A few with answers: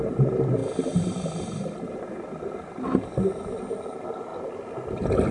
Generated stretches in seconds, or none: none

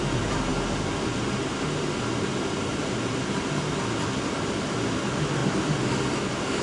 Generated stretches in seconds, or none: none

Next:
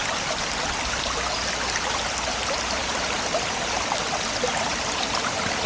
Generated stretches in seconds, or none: none